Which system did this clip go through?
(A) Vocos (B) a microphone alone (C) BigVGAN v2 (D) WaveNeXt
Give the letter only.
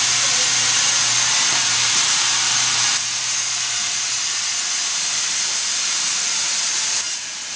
C